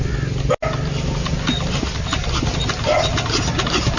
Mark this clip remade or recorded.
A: recorded